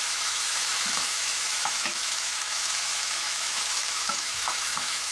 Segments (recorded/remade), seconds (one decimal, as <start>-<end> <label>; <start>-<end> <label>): 0.0-5.1 remade